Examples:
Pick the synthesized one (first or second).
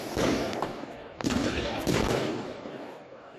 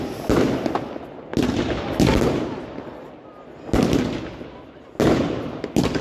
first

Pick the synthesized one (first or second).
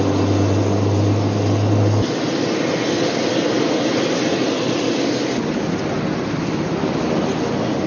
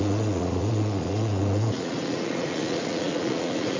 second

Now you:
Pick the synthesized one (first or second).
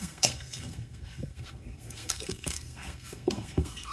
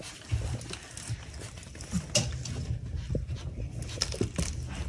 first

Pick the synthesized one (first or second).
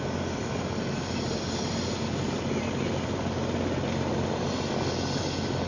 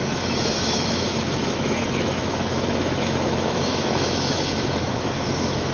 second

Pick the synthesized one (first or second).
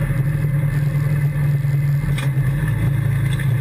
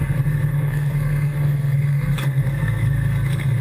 second